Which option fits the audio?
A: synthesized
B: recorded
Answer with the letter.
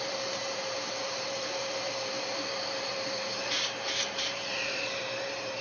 A